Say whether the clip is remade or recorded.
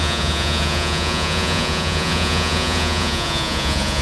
remade